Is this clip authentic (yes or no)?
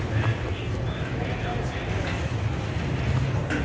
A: yes